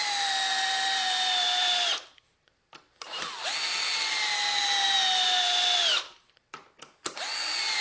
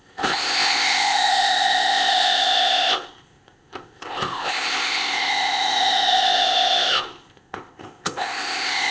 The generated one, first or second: second